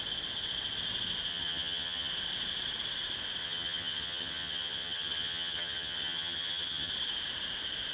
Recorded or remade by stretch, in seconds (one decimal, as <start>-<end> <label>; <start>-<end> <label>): 0.0-1.3 recorded; 1.3-2.1 remade; 2.1-3.4 recorded; 3.4-6.9 remade; 6.9-7.9 recorded

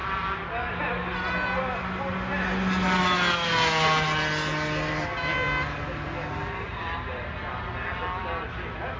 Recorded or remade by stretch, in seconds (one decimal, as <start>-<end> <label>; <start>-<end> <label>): 0.0-9.0 recorded

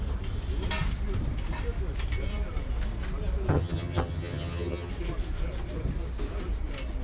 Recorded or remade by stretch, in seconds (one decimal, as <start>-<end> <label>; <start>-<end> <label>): 0.0-3.5 recorded; 3.5-4.9 remade; 4.9-7.0 recorded